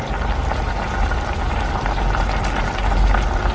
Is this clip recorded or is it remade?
recorded